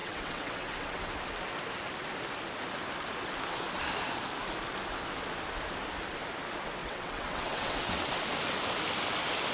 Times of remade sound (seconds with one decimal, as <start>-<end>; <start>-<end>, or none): 0.0-1.1; 6.8-8.1